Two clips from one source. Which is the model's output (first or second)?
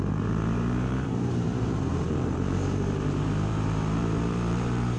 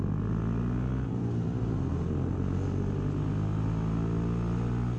first